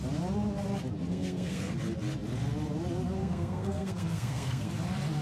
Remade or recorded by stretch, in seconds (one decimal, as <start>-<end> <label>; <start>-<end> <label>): 0.0-1.1 recorded; 1.1-1.7 remade; 1.7-3.2 recorded; 3.2-4.7 remade; 4.7-5.2 recorded